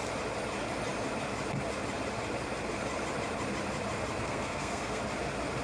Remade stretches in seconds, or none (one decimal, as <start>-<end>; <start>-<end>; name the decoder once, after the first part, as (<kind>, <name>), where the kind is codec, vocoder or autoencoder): 4.2-5.0 (codec, SNAC)

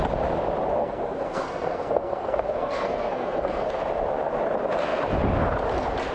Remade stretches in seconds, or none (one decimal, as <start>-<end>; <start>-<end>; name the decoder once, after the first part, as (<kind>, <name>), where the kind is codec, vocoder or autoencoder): 0.8-3.8 (codec, SNAC)

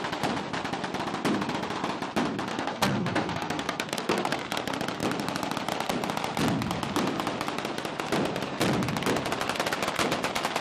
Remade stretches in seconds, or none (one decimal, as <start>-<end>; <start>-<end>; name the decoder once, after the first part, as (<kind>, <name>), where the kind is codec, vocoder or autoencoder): 2.5-4.4 (codec, SNAC)

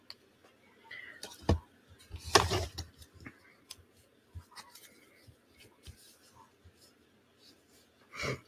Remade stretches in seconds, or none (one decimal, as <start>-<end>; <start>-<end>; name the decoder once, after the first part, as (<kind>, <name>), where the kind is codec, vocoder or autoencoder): none

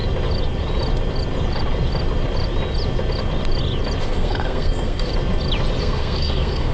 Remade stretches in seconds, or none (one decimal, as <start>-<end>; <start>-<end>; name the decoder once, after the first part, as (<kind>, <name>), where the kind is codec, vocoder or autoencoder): 4.0-5.1 (codec, SNAC); 5.8-6.7